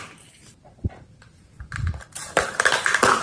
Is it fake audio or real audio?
real